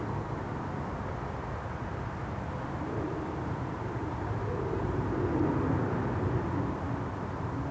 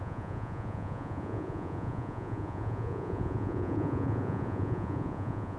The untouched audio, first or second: first